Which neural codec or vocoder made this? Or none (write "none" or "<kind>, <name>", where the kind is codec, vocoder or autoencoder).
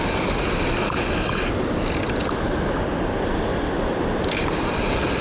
none